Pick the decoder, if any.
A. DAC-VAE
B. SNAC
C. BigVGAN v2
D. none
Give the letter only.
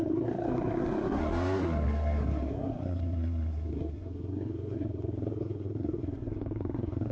B